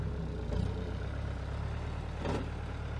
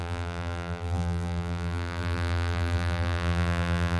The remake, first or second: second